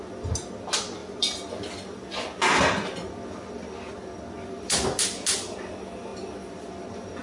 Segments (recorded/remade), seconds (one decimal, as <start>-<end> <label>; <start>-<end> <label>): 0.0-7.2 recorded